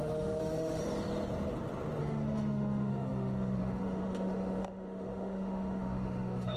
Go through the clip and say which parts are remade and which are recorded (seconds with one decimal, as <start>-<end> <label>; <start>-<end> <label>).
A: 0.0-0.8 remade; 0.8-2.0 recorded; 2.0-6.6 remade